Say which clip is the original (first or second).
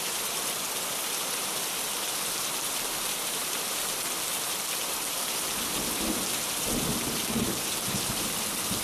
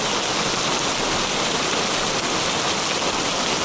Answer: second